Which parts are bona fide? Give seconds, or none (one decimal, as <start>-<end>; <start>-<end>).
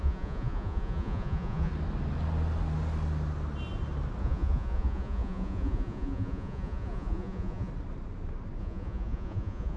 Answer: 1.7-4.2; 7.7-8.6